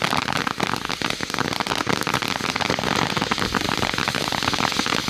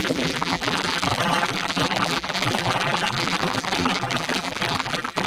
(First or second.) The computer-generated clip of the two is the second